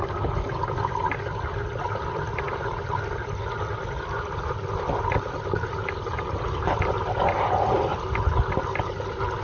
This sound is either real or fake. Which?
real